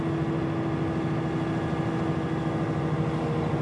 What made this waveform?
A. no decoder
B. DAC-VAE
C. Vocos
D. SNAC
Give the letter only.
A